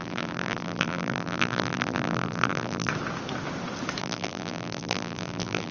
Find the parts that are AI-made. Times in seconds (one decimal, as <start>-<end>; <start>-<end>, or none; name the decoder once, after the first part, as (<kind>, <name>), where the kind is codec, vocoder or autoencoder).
0.0-2.9 (vocoder, BigVGAN v2); 4.0-5.7